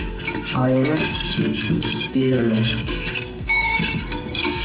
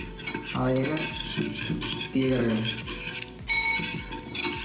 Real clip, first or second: second